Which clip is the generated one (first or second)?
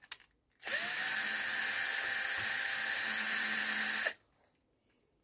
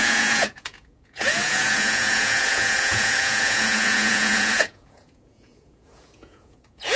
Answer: second